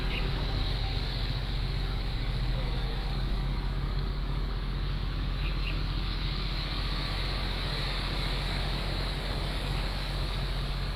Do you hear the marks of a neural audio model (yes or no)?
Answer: yes